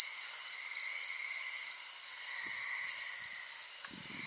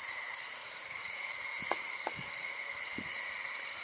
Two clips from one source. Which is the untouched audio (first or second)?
first